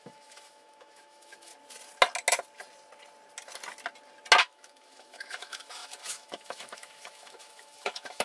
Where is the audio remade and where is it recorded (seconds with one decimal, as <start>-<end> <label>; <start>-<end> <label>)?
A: 0.0-1.5 remade; 1.5-4.4 recorded; 4.4-8.2 remade